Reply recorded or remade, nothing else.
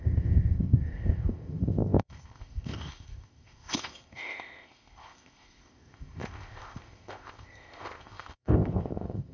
remade